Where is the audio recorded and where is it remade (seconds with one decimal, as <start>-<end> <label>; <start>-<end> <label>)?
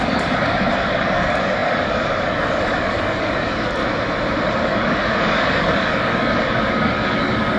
0.0-3.8 remade; 3.8-4.6 recorded; 4.6-7.6 remade